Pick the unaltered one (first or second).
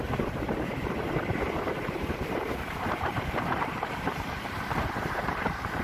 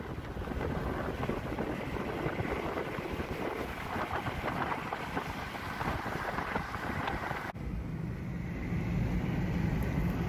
second